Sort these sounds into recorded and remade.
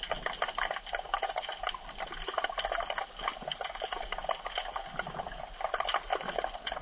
recorded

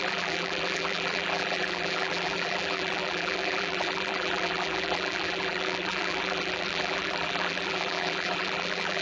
remade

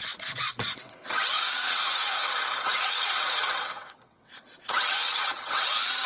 remade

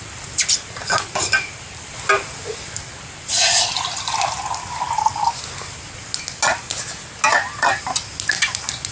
recorded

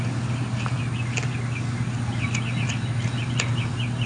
recorded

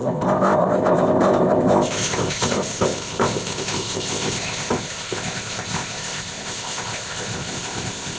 remade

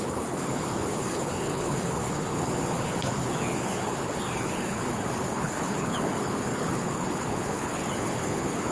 remade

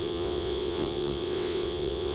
remade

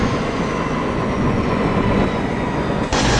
remade